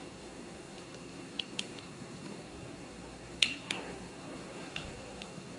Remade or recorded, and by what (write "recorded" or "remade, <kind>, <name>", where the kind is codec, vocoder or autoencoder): remade, codec, SNAC